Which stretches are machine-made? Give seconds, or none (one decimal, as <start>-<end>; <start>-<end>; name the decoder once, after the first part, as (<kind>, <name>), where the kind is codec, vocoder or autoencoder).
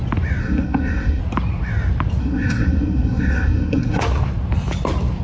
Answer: 0.4-1.2 (codec, SNAC); 2.2-4.0